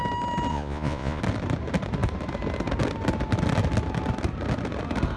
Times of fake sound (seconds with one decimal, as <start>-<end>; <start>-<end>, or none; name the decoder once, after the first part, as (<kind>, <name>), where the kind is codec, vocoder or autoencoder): 0.5-1.2 (vocoder, Vocos)